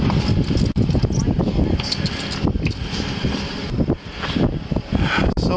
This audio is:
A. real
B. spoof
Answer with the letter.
A